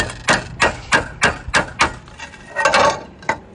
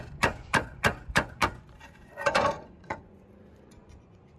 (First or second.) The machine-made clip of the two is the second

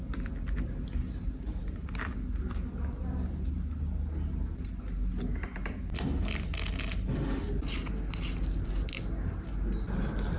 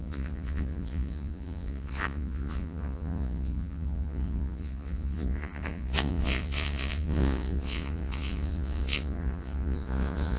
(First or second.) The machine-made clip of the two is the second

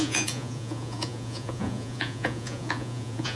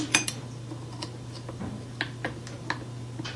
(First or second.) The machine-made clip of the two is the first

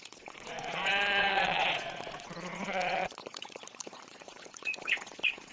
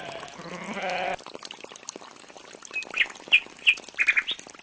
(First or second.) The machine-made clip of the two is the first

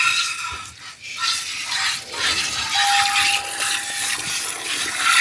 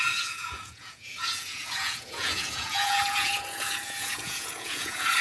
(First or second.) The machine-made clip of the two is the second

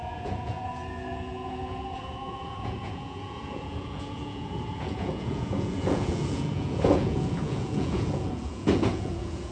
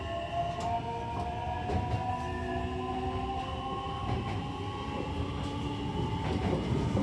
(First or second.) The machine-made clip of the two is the first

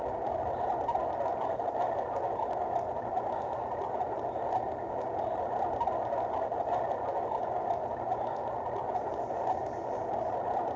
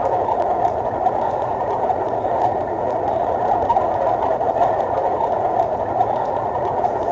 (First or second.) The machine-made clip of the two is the second